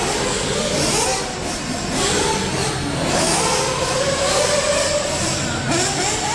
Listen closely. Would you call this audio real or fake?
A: real